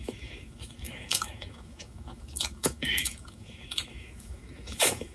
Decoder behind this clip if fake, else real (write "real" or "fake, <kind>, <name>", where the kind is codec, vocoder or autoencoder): fake, autoencoder, DAC-VAE